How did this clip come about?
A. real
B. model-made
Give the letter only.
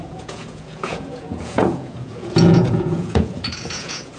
B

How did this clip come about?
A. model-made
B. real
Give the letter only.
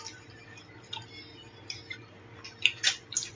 B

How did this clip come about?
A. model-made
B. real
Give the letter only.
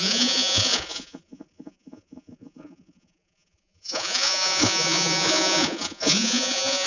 A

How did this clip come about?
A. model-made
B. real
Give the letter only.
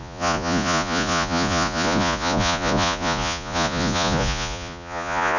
A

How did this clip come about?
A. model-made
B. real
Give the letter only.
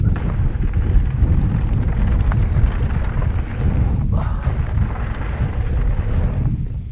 B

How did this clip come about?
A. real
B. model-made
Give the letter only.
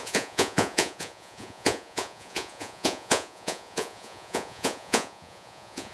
B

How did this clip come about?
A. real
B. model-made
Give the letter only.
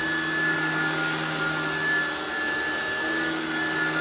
A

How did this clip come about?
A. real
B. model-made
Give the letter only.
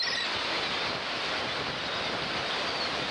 A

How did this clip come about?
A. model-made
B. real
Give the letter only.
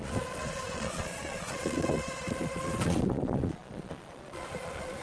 A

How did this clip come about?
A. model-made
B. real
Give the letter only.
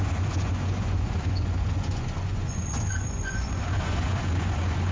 A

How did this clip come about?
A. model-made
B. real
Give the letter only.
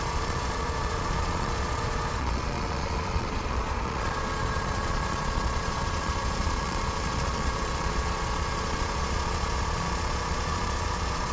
A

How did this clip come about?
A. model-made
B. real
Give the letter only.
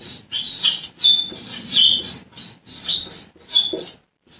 B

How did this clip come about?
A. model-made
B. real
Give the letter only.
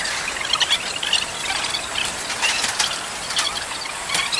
B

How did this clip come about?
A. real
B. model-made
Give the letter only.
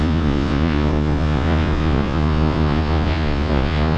B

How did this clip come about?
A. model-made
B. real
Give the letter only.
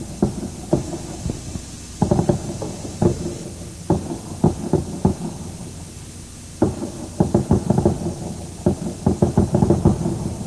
B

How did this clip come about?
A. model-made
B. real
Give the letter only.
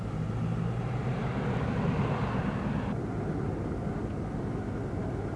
B